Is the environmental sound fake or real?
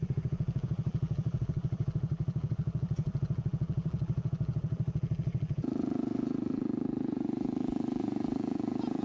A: fake